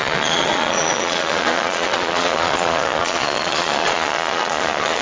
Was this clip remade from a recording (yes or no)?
yes